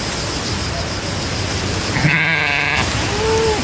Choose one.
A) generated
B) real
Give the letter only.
B